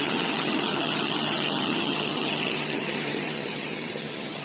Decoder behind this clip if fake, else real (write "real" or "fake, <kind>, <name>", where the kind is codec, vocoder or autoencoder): fake, vocoder, HiFi-GAN